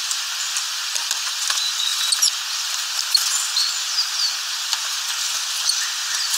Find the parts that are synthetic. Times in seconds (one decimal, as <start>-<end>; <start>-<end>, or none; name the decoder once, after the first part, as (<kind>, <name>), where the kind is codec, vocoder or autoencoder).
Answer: none